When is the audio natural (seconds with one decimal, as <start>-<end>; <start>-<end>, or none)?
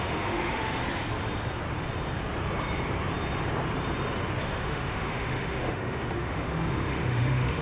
0.8-4.4